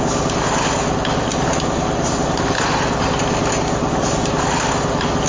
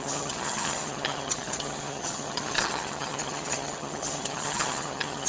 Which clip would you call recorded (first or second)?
first